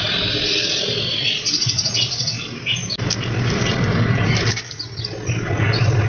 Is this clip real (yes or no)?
yes